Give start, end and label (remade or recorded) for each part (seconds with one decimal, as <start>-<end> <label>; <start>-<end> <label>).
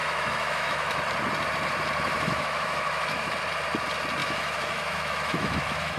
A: 0.0-1.0 remade; 1.0-2.1 recorded; 2.1-3.3 remade; 3.3-4.2 recorded; 4.2-6.0 remade